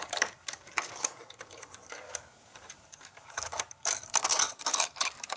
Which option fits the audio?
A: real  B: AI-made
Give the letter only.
B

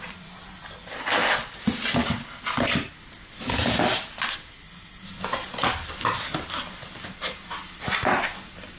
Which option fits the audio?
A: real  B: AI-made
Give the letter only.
A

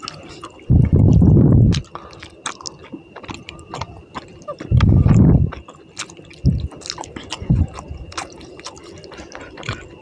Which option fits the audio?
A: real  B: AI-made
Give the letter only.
A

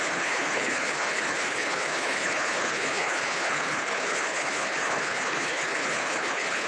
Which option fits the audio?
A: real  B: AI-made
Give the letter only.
B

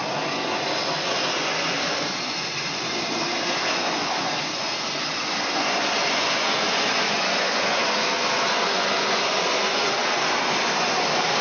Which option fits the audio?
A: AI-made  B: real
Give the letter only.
A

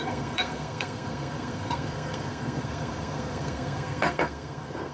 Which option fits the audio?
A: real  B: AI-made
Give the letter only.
B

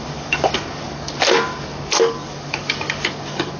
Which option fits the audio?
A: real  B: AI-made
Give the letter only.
B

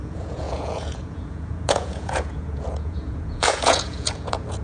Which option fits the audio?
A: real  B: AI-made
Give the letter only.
B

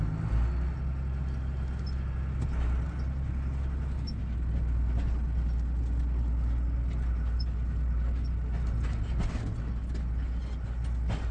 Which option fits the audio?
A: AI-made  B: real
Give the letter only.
B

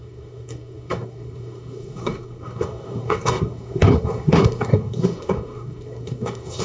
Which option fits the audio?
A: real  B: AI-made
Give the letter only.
B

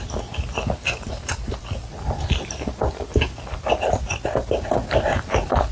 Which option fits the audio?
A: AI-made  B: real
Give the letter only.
B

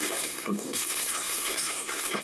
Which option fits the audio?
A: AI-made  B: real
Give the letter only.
A